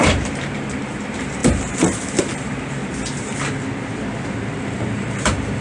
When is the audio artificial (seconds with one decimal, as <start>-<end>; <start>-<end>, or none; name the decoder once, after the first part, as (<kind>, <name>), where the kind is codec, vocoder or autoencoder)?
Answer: 0.0-2.8 (vocoder, BigVGAN v2); 4.6-5.6